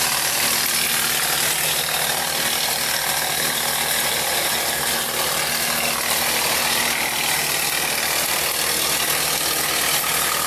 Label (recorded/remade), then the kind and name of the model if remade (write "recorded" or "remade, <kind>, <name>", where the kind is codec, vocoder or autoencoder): recorded